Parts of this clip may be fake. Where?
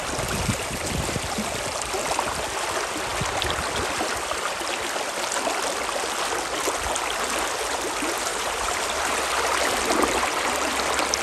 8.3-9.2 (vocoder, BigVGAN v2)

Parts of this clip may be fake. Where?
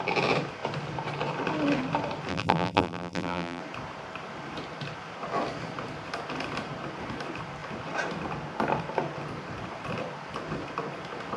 2.3-3.6 (vocoder, BigVGAN v2)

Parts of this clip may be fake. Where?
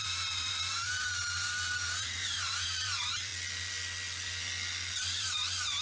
0.0-3.3 (vocoder, BigVGAN v2); 5.2-5.8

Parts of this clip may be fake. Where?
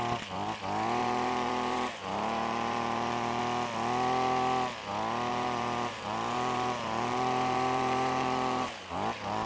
1.0-3.4 (vocoder, BigVGAN v2); 5.3-9.5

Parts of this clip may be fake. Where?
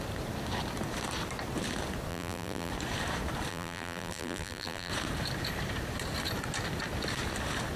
2.1-2.7 (vocoder, BigVGAN v2); 3.5-4.9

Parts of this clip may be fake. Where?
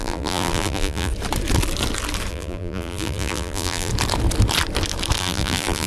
0.0-1.1 (vocoder, BigVGAN v2); 2.3-3.9; 5.2-5.9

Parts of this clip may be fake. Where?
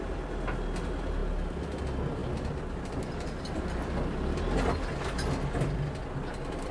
none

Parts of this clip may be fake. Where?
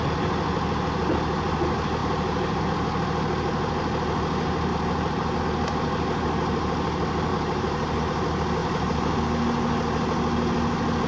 2.0-2.6 (vocoder, BigVGAN v2); 4.7-5.4; 7.3-8.0; 8.6-9.2